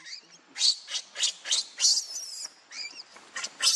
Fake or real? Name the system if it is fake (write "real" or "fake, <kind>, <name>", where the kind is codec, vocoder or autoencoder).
real